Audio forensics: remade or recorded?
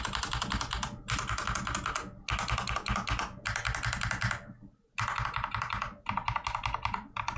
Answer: recorded